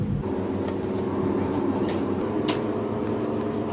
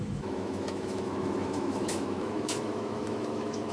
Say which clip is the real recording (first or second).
first